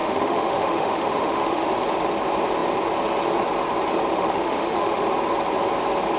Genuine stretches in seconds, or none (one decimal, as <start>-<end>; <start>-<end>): 1.7-4.1; 5.0-6.2